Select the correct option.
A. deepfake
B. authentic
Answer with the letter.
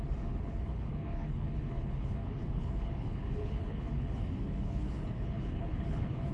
A